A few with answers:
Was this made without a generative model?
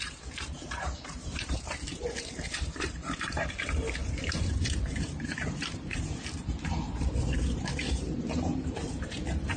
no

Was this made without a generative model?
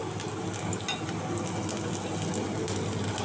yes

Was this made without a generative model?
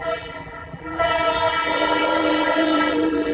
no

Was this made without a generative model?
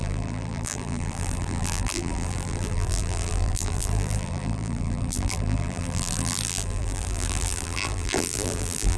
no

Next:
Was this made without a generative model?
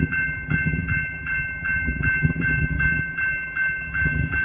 no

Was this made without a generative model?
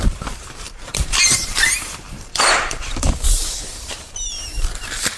no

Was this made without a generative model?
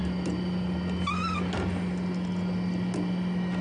yes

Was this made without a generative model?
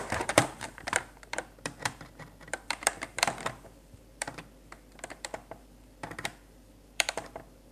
no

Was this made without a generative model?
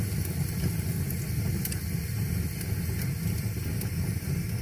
yes